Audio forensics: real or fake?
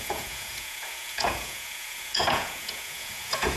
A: fake